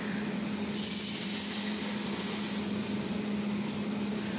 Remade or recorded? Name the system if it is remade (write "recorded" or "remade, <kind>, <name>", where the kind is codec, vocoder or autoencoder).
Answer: recorded